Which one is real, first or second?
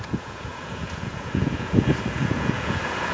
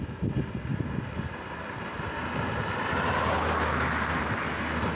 second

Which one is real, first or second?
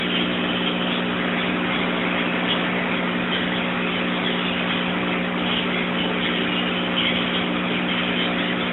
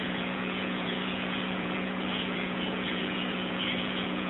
first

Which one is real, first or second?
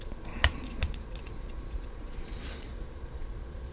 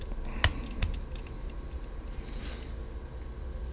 second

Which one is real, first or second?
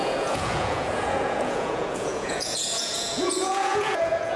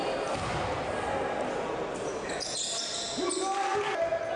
second